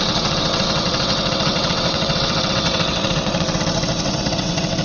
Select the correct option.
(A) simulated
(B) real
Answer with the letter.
A